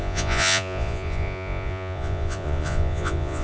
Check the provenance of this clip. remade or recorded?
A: remade